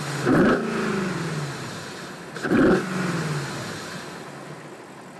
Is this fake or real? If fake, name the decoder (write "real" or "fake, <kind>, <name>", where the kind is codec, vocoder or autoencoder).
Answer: real